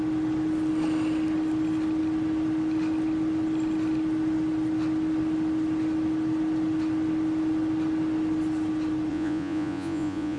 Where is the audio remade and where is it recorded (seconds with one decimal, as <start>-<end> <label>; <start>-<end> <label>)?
0.0-9.1 recorded; 9.1-10.4 remade